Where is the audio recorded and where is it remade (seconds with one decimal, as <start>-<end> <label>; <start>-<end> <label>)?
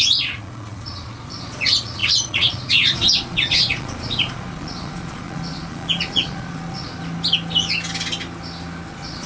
0.0-6.9 remade; 6.9-8.9 recorded; 8.9-9.3 remade